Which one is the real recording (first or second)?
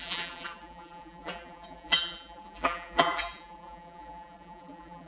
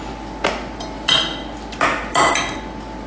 second